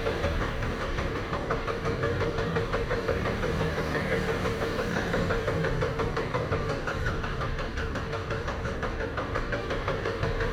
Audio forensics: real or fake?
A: fake